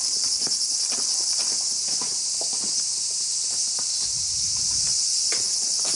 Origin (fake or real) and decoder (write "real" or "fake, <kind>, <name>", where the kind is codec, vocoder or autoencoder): fake, vocoder, BigVGAN v2